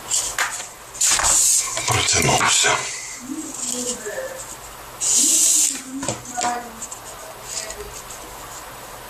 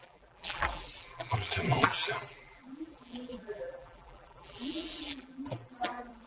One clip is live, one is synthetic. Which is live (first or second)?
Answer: first